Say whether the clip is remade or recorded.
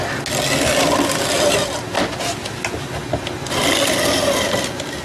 recorded